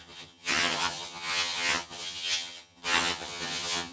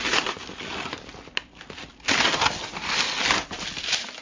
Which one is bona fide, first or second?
second